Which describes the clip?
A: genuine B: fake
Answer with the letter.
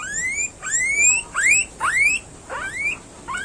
A